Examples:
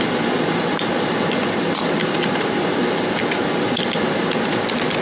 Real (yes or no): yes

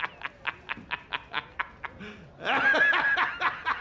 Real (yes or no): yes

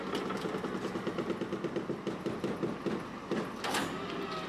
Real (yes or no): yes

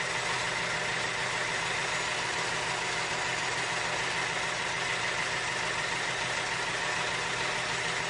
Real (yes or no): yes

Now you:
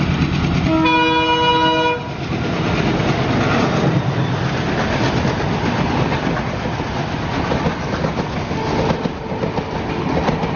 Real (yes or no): yes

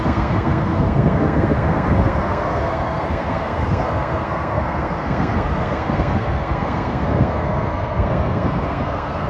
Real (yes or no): no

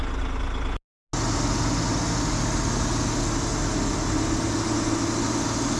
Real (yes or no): yes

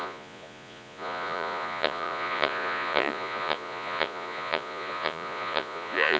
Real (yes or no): no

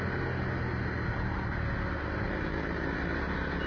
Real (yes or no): yes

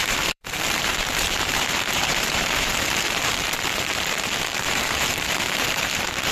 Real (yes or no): no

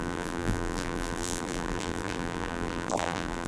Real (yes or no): no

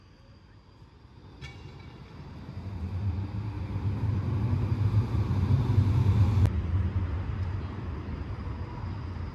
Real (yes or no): yes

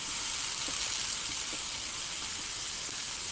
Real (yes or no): yes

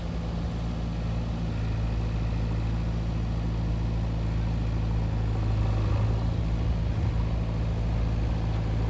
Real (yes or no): yes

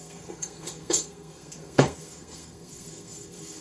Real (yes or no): no